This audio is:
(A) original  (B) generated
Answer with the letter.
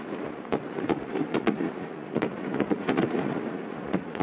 B